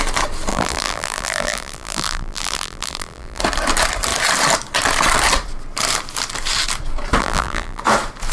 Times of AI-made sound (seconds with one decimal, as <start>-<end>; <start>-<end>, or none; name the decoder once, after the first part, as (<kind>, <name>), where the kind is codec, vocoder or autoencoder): 0.5-3.4 (vocoder, BigVGAN v2); 7.2-7.8